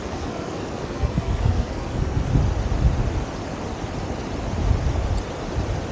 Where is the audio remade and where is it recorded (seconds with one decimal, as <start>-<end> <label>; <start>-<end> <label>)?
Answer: 0.0-2.3 remade; 2.3-5.9 recorded

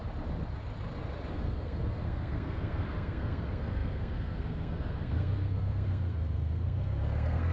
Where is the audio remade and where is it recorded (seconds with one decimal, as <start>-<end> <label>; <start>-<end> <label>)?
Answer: 0.0-1.3 recorded; 1.3-7.5 remade